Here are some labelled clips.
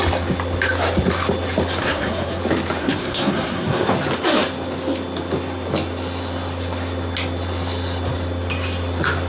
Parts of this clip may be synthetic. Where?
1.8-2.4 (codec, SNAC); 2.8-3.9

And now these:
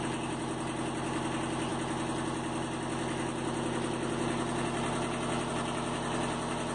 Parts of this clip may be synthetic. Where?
none

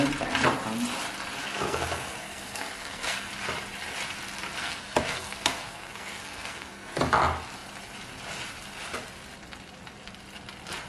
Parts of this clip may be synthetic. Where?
1.4-3.3 (codec, SNAC); 4.6-7.0

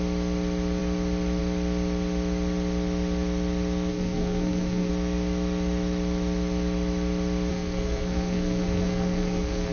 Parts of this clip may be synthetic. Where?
3.9-4.9 (codec, SNAC); 7.5-9.7

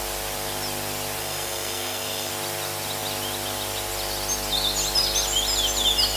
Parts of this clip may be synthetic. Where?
1.2-2.3 (codec, SNAC)

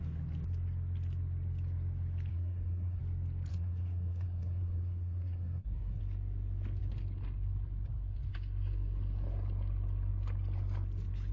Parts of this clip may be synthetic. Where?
2.3-3.0 (codec, SNAC); 3.5-6.0

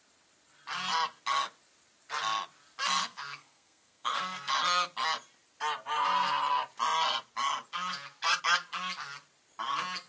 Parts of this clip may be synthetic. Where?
3.0-4.5 (codec, SNAC)